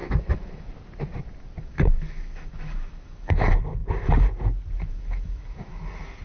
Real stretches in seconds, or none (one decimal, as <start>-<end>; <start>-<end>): 0.7-1.6; 3.4-4.9; 5.8-6.2